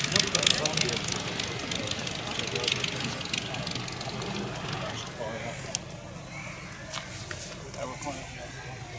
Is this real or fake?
real